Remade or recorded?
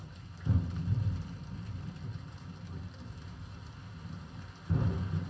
recorded